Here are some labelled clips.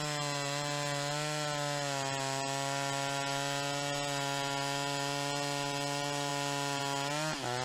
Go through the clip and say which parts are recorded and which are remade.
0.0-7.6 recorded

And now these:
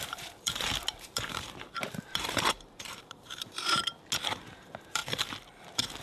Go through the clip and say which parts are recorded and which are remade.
0.0-3.8 remade; 3.8-4.4 recorded; 4.4-5.0 remade; 5.0-5.6 recorded; 5.6-6.0 remade